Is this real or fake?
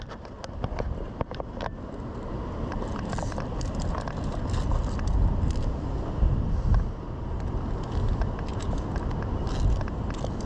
real